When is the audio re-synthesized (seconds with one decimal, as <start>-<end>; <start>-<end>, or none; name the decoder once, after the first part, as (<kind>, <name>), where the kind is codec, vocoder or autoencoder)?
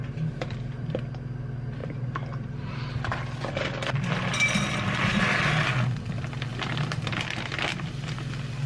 none